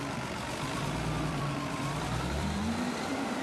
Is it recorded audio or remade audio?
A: remade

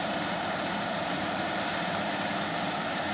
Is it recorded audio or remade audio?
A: remade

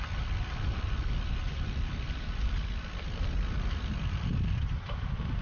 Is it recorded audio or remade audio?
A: remade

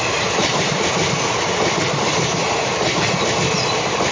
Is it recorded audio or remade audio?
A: remade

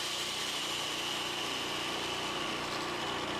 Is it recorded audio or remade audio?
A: recorded